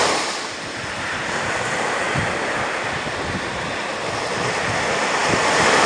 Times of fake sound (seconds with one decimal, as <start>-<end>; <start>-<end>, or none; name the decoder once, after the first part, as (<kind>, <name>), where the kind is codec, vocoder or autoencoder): none